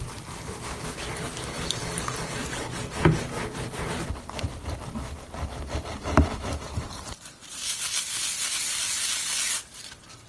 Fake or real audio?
fake